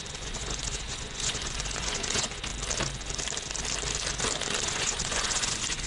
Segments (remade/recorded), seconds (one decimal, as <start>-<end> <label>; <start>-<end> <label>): 0.0-2.5 remade; 2.5-4.7 recorded; 4.7-5.9 remade